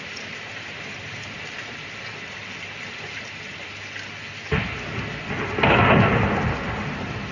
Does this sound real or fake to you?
real